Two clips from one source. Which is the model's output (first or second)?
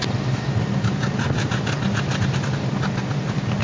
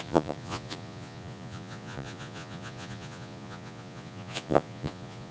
second